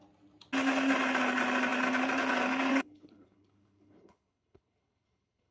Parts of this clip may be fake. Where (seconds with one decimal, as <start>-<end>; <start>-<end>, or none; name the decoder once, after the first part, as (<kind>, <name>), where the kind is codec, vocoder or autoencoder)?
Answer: 2.7-5.5 (codec, HILCodec)